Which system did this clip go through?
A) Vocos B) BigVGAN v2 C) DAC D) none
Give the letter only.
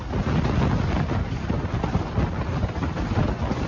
D